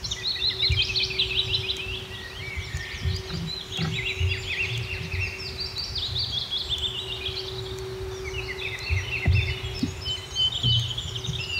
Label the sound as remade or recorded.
recorded